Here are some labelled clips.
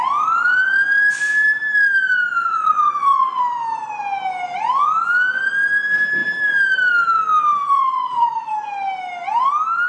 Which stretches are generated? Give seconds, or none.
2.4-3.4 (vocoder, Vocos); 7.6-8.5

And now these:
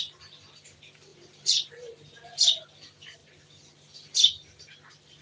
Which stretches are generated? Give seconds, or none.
none

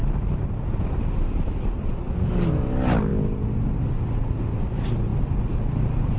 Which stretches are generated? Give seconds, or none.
none

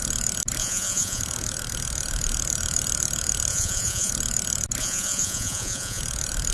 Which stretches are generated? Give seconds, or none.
0.6-1.2 (vocoder, Vocos); 3.5-4.1; 4.8-6.0

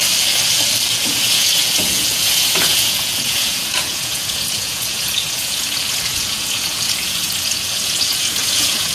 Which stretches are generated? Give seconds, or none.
0.9-8.9 (vocoder, Vocos)